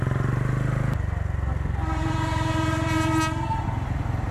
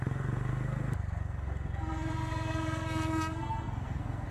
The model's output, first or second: second